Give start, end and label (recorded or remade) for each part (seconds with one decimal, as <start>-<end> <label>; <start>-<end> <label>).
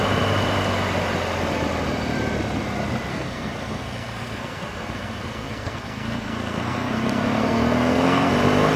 0.0-3.1 recorded; 3.1-8.3 remade; 8.3-8.8 recorded